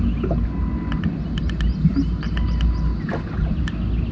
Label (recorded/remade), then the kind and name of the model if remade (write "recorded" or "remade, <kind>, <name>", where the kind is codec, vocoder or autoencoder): recorded